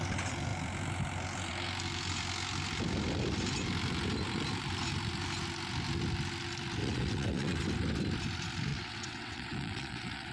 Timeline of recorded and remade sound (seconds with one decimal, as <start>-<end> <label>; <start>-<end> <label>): 0.0-6.8 recorded; 6.8-7.6 remade; 7.6-8.7 recorded; 8.7-10.3 remade